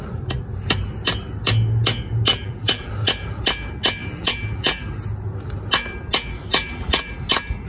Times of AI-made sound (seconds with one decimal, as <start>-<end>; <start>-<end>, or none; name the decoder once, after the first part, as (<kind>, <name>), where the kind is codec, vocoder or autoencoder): 2.3-2.9 (vocoder, BigVGAN v2); 4.0-4.8; 6.5-7.1